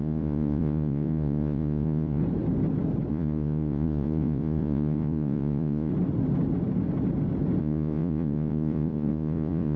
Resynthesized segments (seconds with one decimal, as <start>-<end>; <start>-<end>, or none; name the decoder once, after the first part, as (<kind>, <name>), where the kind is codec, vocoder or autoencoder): 0.0-2.2 (vocoder, Vocos); 3.1-5.9; 7.6-9.8